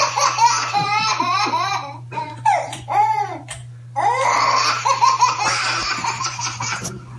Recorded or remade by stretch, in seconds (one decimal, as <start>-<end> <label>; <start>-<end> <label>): 0.0-3.6 remade; 3.6-6.2 recorded; 6.2-7.2 remade